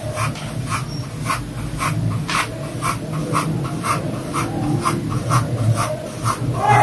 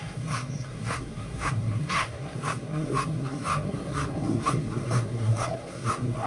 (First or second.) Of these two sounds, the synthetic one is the second